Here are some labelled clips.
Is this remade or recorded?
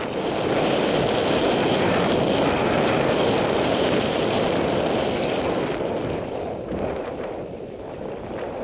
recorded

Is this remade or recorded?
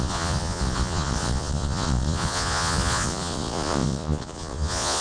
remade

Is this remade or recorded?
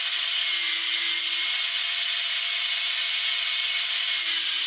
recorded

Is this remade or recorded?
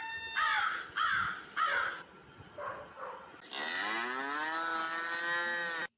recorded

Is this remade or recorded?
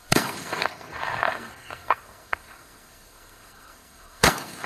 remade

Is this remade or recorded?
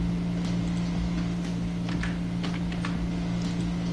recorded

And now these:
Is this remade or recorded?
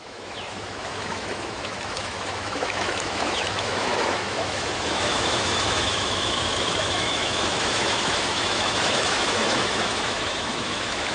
remade